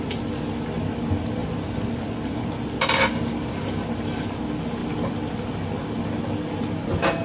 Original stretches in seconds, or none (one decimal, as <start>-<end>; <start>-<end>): 0.0-1.4; 2.5-7.2